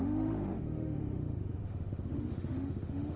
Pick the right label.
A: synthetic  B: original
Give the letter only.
A